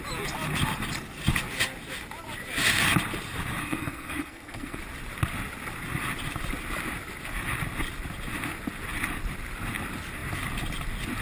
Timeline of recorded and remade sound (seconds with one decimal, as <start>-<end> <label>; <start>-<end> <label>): 0.0-3.6 recorded; 3.6-4.8 remade; 4.8-11.2 recorded